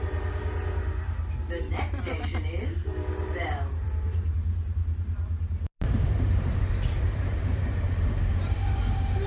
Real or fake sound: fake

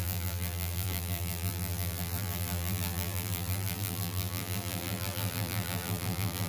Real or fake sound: fake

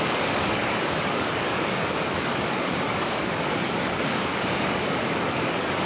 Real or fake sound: fake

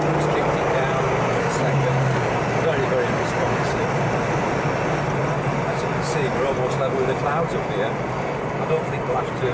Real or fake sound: real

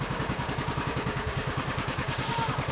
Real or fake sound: fake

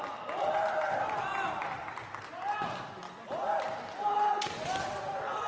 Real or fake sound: real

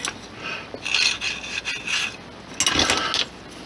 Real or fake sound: real